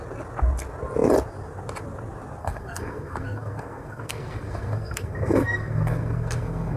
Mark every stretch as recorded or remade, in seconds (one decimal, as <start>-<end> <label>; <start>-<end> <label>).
0.0-2.4 recorded; 2.4-6.8 remade